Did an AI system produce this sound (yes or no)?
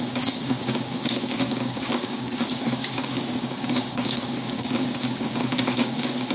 yes